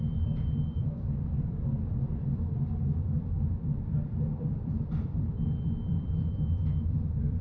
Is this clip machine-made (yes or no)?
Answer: yes